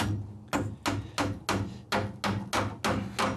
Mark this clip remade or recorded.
recorded